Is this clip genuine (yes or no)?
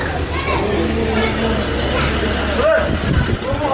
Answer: yes